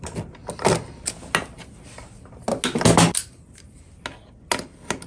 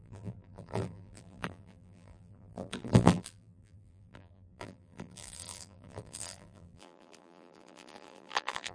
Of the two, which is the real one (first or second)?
first